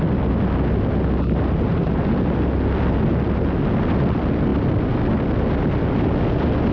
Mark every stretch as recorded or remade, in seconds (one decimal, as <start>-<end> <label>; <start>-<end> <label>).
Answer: 0.0-6.7 recorded